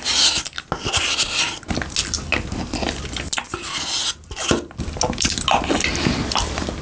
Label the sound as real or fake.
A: real